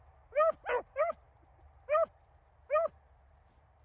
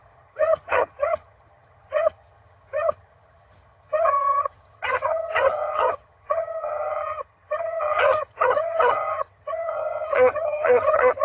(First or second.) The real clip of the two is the first